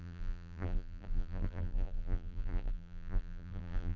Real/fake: fake